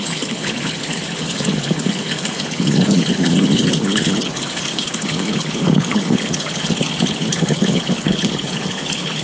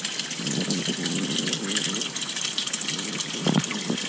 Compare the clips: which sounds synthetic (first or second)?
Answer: first